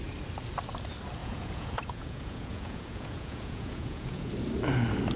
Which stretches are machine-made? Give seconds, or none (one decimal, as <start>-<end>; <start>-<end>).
1.2-4.3